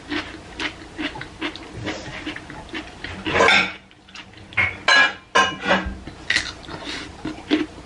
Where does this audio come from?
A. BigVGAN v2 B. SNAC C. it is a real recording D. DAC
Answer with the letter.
C